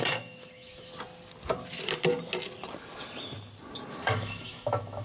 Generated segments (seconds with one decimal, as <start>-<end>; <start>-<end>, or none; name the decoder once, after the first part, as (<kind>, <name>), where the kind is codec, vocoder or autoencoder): 0.0-0.9 (autoencoder, DAC-VAE); 3.9-5.0